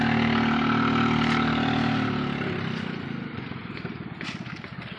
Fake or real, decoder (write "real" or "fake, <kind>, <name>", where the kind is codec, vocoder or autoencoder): real